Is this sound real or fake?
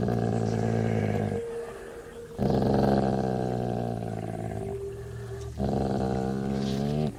real